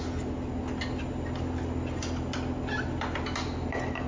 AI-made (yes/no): no